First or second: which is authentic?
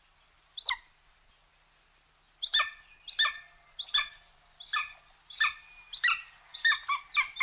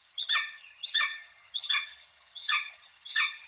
first